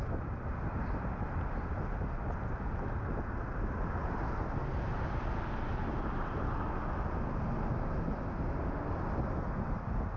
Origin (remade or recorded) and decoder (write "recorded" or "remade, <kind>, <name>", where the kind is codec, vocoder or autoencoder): recorded